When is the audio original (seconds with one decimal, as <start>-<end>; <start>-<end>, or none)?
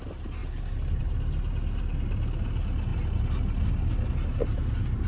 0.0-5.1